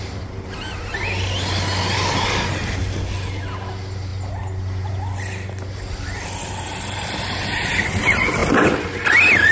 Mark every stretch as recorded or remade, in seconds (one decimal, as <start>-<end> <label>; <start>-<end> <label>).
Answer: 0.0-9.5 recorded